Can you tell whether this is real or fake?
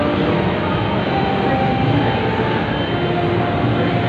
real